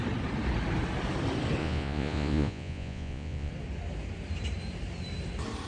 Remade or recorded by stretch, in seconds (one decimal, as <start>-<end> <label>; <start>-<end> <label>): 0.0-1.6 recorded; 1.6-3.5 remade; 3.5-5.7 recorded